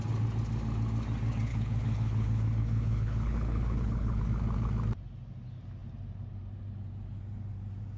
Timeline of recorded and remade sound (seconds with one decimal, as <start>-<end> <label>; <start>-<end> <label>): 0.0-1.5 recorded; 1.5-4.2 remade; 4.2-8.0 recorded